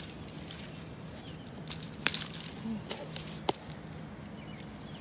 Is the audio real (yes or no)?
yes